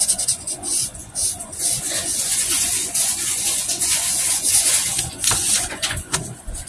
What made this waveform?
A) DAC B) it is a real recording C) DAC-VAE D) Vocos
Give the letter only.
D